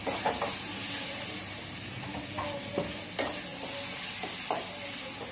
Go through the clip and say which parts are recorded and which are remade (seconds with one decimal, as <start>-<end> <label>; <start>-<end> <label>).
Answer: 0.0-2.0 remade; 2.0-5.3 recorded